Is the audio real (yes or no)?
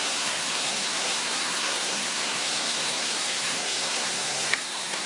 no